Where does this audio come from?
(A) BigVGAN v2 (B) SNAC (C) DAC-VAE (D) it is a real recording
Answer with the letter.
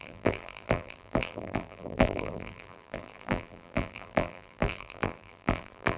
A